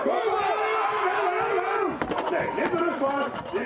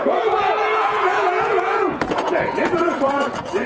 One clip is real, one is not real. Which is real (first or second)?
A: first